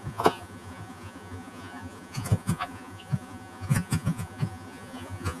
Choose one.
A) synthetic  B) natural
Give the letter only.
A